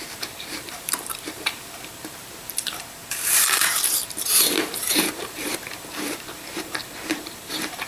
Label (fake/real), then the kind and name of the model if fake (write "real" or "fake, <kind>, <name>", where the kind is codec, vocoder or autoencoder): fake, vocoder, BigVGAN v2